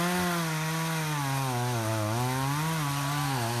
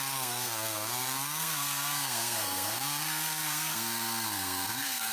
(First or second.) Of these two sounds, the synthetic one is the second